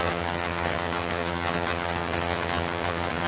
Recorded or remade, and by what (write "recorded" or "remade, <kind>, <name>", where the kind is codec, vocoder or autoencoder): remade, vocoder, HiFi-GAN